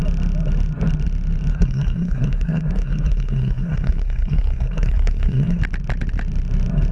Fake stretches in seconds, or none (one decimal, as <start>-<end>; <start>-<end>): 1.5-5.6